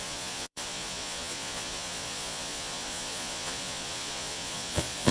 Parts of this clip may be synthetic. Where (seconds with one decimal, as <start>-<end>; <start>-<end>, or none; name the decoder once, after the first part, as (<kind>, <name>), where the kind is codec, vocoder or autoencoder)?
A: 0.0-5.1 (vocoder, Vocos)